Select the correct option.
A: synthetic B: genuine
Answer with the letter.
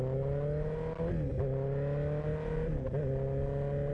B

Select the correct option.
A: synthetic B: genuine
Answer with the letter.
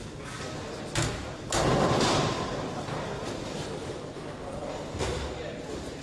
B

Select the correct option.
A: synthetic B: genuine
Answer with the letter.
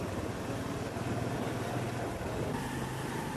B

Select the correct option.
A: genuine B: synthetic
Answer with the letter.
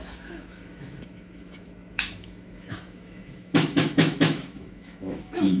B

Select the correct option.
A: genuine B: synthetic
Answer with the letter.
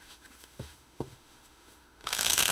B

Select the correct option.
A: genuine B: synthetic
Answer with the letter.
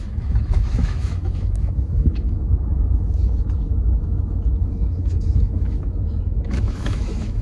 B